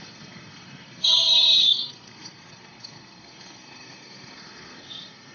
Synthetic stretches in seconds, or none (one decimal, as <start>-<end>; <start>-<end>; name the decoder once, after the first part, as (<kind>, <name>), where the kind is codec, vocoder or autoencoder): 0.0-5.3 (codec, SNAC)